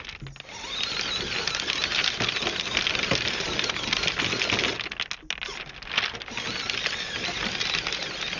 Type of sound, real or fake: real